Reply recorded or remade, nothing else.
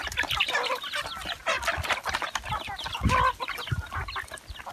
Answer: recorded